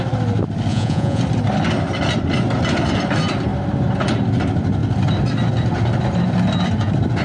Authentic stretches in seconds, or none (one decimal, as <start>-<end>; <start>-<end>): 0.0-0.7; 1.2-7.2